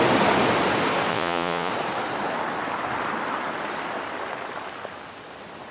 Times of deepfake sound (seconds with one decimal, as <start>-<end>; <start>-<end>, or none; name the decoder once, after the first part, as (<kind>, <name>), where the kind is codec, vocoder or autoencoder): 1.1-1.7 (vocoder, Vocos)